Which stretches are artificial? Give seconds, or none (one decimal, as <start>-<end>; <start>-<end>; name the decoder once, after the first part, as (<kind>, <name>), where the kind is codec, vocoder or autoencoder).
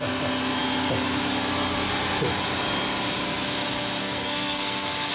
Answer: 4.0-5.1 (codec, SNAC)